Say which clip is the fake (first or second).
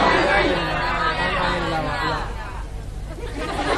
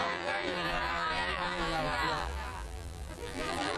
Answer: second